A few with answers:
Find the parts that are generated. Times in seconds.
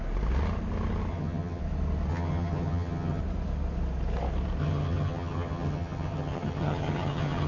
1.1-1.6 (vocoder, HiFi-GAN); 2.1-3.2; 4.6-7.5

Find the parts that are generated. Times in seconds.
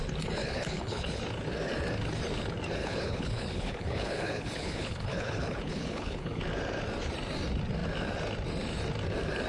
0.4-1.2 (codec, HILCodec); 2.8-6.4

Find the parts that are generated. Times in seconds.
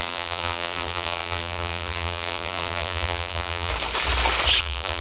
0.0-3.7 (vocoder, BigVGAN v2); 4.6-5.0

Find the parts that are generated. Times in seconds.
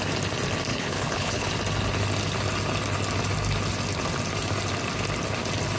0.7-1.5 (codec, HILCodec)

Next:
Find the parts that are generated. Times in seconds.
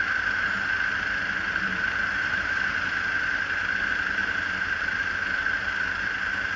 1.7-2.7 (vocoder, BigVGAN v2); 4.2-6.6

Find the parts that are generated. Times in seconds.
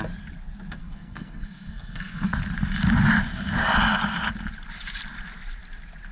0.8-2.3 (codec, SNAC)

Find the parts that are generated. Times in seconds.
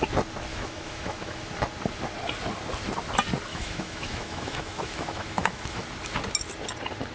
0.5-1.4 (autoencoder, DAC-VAE); 3.5-5.8